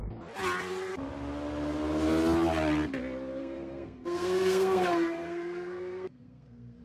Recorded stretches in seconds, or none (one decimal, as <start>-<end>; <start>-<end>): 0.0-3.4